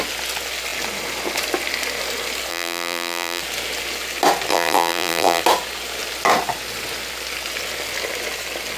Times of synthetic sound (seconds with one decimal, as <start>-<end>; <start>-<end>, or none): 2.5-3.4; 4.5-5.4